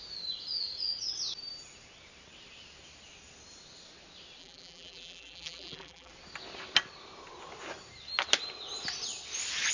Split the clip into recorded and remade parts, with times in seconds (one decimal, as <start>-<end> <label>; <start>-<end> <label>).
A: 0.0-4.4 recorded; 4.4-6.1 remade; 6.1-9.7 recorded